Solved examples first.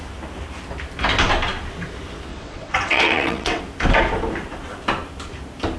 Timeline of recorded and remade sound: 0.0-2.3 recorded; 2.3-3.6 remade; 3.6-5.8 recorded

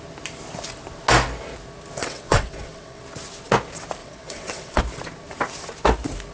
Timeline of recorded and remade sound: 0.0-2.0 recorded; 2.0-3.0 remade; 3.0-4.0 recorded; 4.0-4.8 remade; 4.8-6.3 recorded

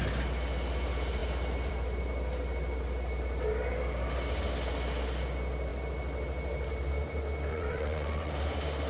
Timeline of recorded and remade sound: 0.0-7.5 recorded; 7.5-8.3 remade; 8.3-8.9 recorded